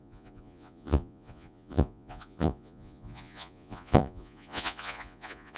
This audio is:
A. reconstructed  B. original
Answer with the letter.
A